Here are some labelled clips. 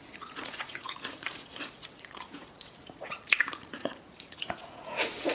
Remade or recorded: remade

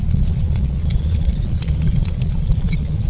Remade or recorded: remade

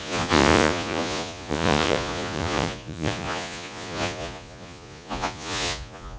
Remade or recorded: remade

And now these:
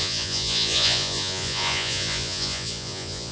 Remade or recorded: remade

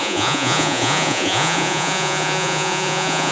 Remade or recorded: remade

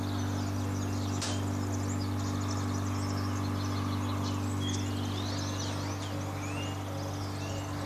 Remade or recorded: recorded